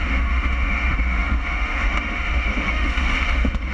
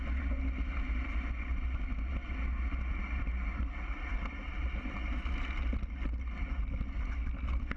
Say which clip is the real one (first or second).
second